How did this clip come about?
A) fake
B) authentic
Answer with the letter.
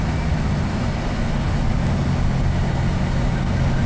B